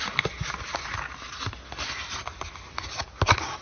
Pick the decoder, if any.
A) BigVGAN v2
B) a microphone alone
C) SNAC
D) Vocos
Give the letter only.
B